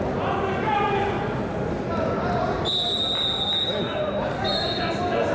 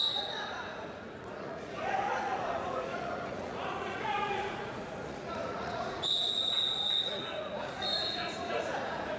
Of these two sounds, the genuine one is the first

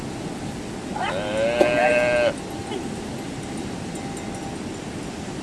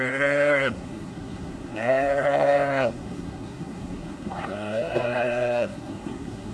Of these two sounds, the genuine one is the first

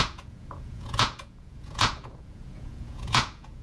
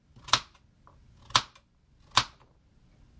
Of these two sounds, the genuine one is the second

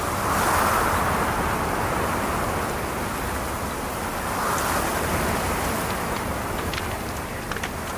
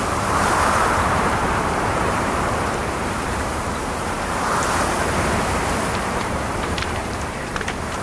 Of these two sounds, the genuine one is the first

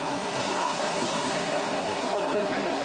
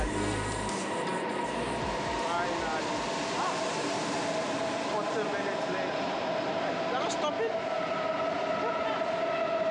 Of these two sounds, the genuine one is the second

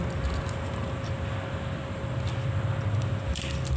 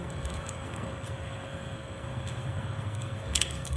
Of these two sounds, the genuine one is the first